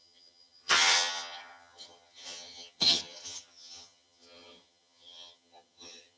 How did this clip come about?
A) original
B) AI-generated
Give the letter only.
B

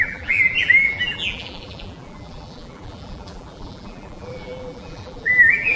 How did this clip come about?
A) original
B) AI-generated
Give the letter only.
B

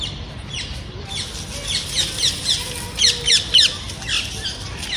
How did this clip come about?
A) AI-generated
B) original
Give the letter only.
B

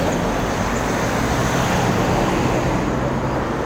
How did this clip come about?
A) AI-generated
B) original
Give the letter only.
B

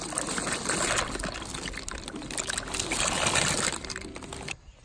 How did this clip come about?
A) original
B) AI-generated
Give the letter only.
A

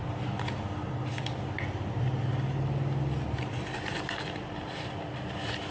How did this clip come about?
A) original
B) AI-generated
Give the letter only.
A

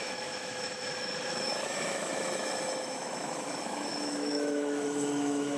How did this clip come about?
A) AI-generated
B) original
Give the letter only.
A